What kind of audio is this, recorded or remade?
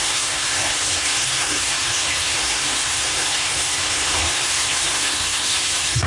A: remade